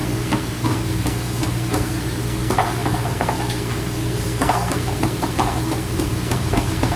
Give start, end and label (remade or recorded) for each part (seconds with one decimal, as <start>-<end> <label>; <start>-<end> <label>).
0.0-7.0 remade